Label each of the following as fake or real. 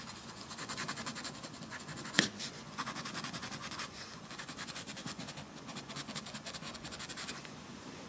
fake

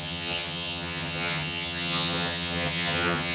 fake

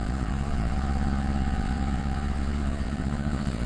fake